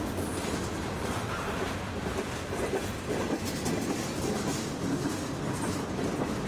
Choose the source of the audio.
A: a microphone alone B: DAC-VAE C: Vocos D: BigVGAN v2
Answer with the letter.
A